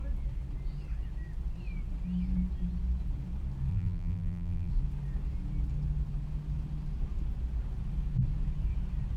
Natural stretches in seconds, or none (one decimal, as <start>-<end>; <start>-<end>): 0.0-3.7; 4.7-9.2